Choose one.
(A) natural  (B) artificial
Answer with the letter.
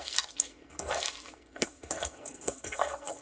B